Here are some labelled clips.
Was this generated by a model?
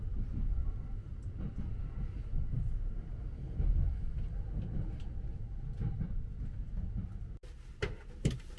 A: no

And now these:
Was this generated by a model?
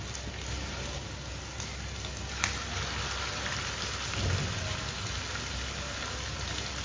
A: no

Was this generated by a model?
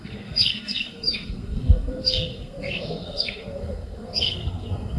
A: yes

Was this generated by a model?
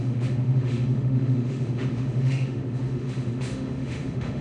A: yes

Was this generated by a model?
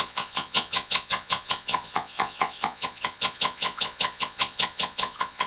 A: yes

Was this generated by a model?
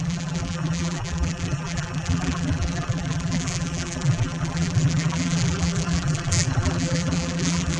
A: yes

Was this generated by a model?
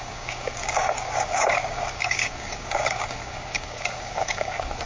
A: yes